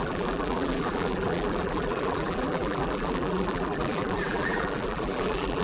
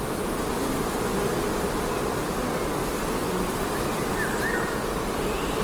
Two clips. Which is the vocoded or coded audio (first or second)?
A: first